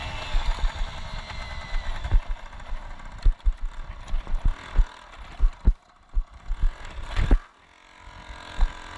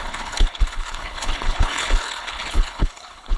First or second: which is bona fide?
first